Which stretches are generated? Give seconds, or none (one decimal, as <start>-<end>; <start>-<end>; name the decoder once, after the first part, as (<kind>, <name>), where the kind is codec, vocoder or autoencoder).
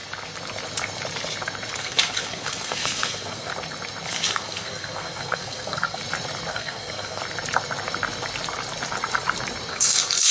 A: 1.8-3.5 (codec, SNAC); 4.1-6.0; 6.5-7.2; 9.7-10.3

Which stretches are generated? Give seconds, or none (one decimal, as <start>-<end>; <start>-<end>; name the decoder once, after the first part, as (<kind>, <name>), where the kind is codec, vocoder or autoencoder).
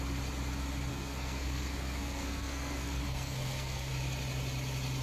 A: 0.9-3.9 (codec, SNAC)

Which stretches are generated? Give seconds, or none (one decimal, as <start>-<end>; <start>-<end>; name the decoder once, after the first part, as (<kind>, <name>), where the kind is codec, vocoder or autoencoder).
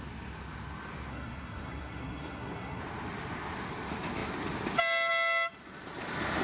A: 1.1-2.8 (codec, SNAC)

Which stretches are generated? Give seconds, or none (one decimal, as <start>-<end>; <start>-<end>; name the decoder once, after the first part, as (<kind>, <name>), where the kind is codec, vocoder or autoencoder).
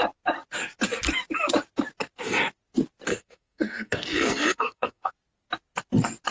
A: 3.1-5.1 (codec, SNAC)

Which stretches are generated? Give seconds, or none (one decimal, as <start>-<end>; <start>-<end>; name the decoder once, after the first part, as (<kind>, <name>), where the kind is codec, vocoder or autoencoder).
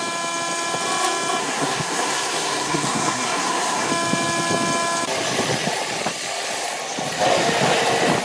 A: 1.4-3.9 (codec, SNAC)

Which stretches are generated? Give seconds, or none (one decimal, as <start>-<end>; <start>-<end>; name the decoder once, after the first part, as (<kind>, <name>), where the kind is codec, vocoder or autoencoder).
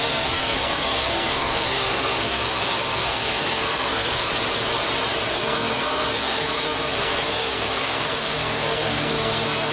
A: 0.0-4.3 (codec, SNAC); 5.3-9.7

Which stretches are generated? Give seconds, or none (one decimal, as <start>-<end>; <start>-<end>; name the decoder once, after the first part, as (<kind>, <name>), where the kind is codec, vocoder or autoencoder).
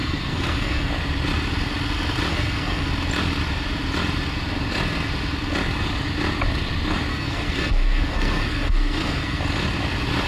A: 0.0-0.9 (codec, SNAC); 2.3-2.9; 7.1-9.4